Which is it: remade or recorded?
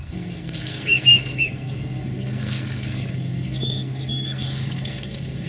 remade